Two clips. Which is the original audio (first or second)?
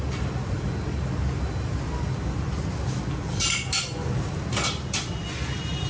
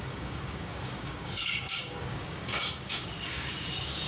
first